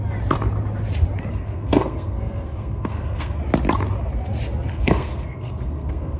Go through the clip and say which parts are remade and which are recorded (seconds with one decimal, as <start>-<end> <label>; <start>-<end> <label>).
0.0-1.3 recorded; 1.3-3.4 remade; 3.4-4.7 recorded; 4.7-6.2 remade